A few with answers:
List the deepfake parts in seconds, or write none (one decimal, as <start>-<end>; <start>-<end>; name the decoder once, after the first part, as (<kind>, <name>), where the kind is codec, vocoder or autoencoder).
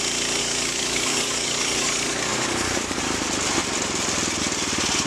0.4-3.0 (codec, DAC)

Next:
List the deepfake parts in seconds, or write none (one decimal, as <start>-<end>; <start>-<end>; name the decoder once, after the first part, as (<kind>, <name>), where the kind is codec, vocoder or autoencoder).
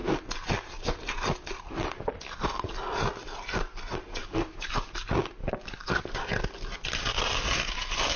4.2-4.9 (codec, DAC); 5.4-6.0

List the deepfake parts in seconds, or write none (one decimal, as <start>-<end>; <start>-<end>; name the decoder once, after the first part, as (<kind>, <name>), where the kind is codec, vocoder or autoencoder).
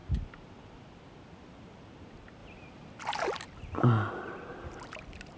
none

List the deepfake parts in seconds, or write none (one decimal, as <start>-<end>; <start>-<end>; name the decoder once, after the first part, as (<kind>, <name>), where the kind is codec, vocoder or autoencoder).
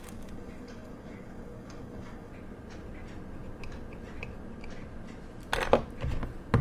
0.0-2.3 (codec, DAC)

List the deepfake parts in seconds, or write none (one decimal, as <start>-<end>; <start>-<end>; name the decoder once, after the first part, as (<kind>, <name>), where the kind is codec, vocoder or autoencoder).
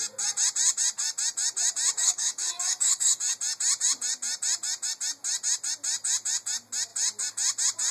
2.0-3.2 (codec, DAC)